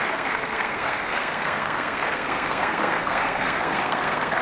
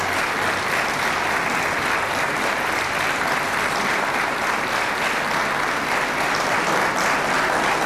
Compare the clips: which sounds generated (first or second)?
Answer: first